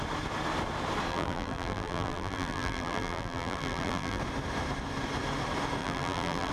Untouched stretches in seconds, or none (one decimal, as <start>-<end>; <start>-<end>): 0.0-1.1; 4.2-5.8